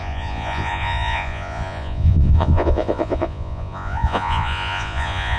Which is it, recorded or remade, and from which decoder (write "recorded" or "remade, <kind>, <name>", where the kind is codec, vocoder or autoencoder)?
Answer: remade, vocoder, Vocos